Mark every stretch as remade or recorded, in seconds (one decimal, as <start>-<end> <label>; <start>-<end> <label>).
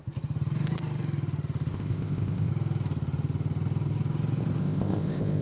0.0-1.7 recorded; 1.7-2.5 remade; 2.5-4.6 recorded; 4.6-5.4 remade